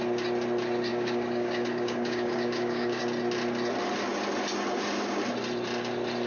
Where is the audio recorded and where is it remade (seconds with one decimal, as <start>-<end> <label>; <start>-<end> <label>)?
0.0-0.9 recorded; 0.9-3.0 remade; 3.0-6.3 recorded